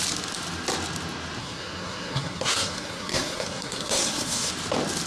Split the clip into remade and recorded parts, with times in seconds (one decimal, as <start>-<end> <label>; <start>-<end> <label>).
0.0-1.4 recorded; 1.4-4.5 remade; 4.5-5.1 recorded